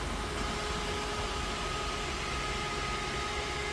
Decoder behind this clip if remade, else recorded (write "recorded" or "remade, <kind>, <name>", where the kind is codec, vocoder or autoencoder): recorded